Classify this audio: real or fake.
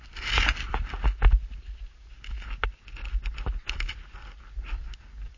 real